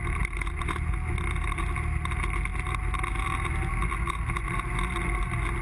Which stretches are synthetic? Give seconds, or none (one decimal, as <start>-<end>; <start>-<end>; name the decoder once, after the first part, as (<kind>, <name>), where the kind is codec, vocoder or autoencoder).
none